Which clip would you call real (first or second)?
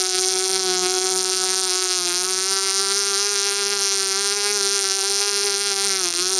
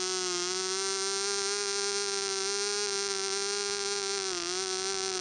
second